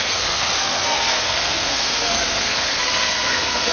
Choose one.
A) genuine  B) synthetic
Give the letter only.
B